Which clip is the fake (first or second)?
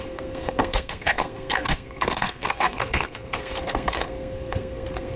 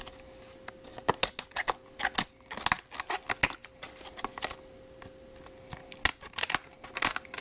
first